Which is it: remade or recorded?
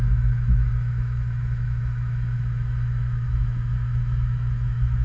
remade